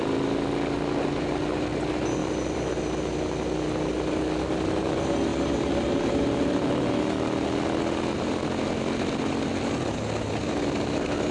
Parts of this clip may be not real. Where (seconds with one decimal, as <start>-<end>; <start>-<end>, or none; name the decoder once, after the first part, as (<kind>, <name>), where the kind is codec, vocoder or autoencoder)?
2.2-2.8 (vocoder, BigVGAN v2)